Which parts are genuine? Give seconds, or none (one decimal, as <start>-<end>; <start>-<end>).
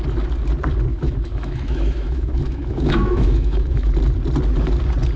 0.0-0.9; 3.9-5.2